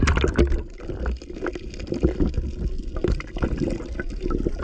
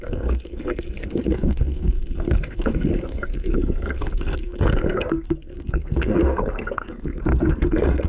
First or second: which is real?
first